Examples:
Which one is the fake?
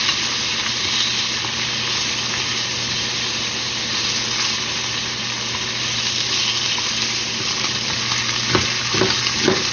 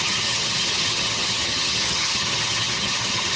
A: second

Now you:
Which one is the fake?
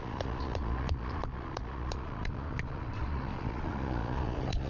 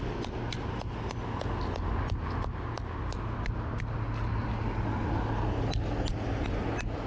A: first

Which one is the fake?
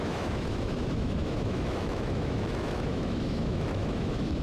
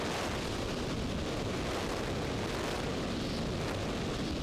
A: first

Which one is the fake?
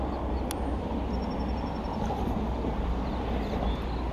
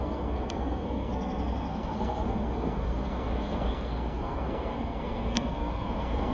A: second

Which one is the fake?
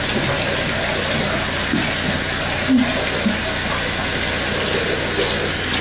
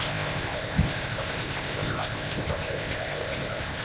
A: second